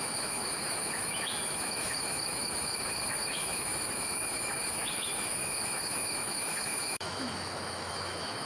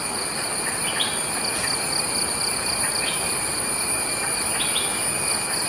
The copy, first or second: first